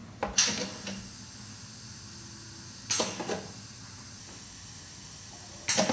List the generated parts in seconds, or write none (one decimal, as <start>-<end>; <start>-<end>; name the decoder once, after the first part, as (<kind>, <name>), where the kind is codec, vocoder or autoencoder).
none